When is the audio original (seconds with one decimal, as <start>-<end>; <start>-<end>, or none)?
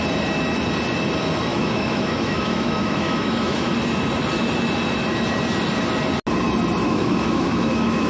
0.0-1.5; 3.7-6.8